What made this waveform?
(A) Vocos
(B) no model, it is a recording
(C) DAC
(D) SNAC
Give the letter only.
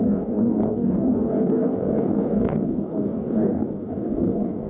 C